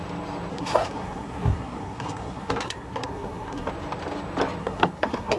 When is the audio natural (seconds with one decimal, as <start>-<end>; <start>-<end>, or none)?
0.0-0.5; 3.7-4.6